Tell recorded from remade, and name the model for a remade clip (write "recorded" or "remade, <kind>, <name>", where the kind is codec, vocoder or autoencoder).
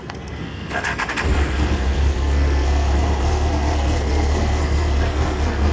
remade, codec, SNAC